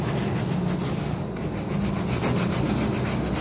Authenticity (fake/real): real